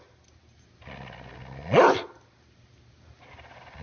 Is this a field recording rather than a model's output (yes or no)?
yes